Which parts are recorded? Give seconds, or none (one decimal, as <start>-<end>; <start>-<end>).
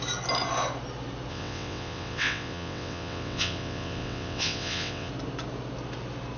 0.0-1.3; 5.1-6.4